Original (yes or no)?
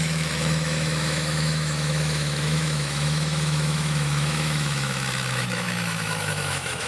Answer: no